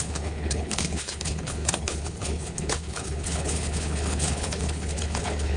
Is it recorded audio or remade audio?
remade